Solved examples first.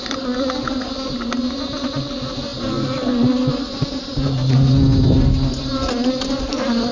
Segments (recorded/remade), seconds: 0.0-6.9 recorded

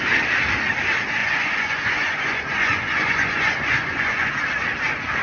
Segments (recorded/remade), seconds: 0.0-1.2 recorded; 1.2-4.3 remade; 4.3-5.2 recorded

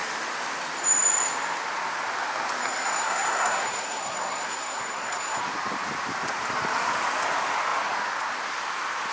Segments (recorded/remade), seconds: 0.0-2.6 recorded; 2.6-5.4 remade; 5.4-9.1 recorded

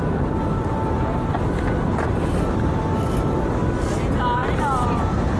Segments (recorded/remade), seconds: 0.0-4.4 recorded; 4.4-5.4 remade

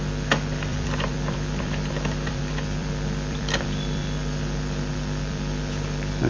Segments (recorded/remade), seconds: 0.0-0.7 recorded; 0.7-2.4 remade; 2.4-2.8 recorded; 2.8-6.3 remade

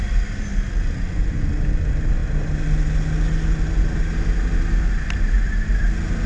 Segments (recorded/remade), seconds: 0.0-6.3 recorded

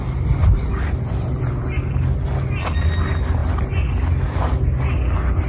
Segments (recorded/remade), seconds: 0.0-5.5 recorded

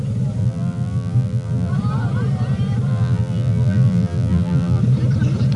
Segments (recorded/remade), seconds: 0.0-0.4 recorded; 0.4-1.7 remade; 1.7-2.9 recorded; 2.9-4.8 remade; 4.8-5.6 recorded